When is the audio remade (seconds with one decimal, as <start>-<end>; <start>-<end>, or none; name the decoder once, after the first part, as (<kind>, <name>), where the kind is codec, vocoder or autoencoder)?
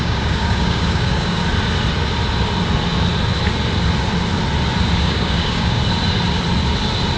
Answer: 0.0-1.4 (codec, DAC); 5.0-5.8